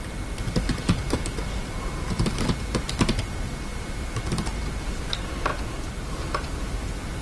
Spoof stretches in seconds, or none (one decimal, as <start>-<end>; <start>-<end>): none